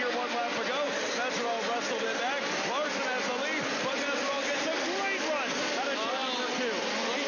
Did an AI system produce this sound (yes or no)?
no